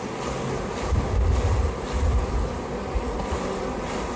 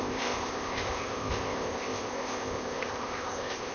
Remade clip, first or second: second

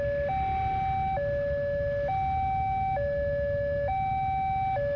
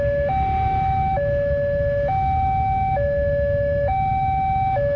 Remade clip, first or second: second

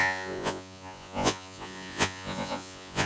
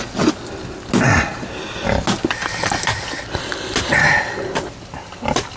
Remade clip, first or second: first